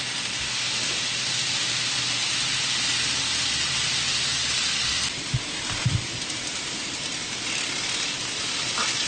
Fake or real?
real